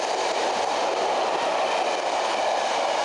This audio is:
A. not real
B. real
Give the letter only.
B